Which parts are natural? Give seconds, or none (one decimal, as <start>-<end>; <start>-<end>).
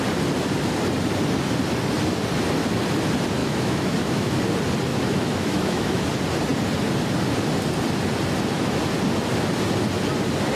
0.0-3.4; 4.4-4.9; 6.0-10.5